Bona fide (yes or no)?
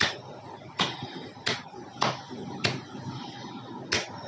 yes